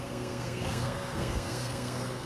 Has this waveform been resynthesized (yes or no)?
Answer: yes